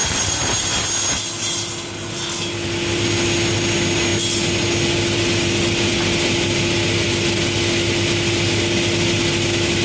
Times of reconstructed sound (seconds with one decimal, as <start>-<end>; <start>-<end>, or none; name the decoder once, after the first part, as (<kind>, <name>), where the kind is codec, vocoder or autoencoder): 0.0-0.7 (vocoder, BigVGAN v2)